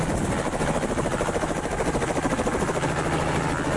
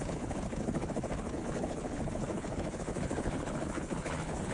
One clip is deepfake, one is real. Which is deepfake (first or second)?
second